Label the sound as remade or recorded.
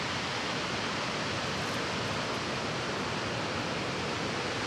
recorded